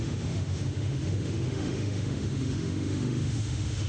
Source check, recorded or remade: remade